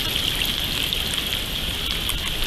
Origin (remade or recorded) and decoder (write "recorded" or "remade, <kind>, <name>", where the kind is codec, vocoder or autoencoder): recorded